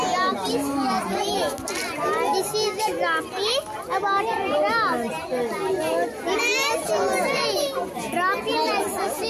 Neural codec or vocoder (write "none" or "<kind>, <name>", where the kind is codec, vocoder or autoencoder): none